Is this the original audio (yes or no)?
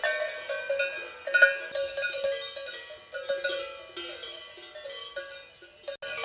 yes